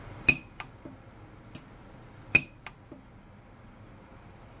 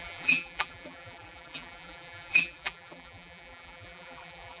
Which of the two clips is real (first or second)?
first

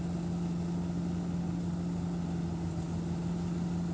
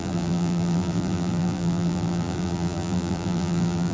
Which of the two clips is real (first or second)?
first